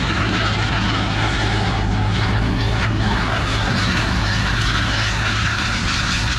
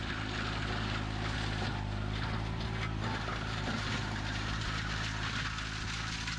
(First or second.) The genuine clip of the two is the second